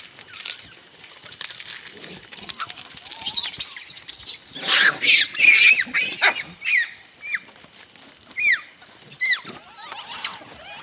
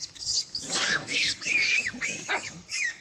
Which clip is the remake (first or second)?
second